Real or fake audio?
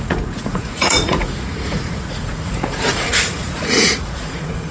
fake